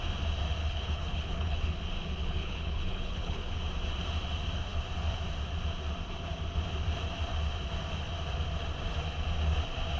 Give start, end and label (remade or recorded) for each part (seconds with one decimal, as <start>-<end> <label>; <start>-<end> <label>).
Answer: 0.0-0.6 recorded; 0.6-1.7 remade; 1.7-2.2 recorded; 2.2-3.6 remade; 3.6-10.0 recorded